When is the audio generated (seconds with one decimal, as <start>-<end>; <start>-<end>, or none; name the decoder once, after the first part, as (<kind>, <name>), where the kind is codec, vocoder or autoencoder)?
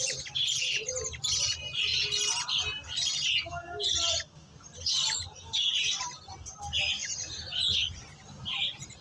none